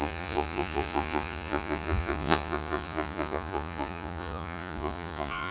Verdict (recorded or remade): remade